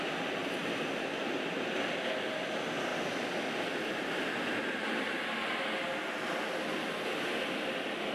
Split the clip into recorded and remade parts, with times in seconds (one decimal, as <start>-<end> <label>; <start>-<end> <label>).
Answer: 0.0-8.1 recorded